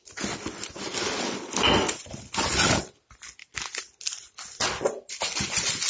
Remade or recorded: recorded